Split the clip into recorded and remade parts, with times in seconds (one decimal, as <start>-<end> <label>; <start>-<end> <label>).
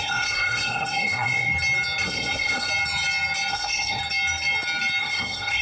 0.0-1.5 remade; 1.5-2.0 recorded; 2.0-2.7 remade; 2.7-3.5 recorded; 3.5-4.0 remade; 4.0-5.0 recorded; 5.0-5.6 remade